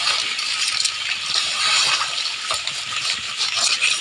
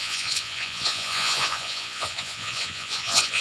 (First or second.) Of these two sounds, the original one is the first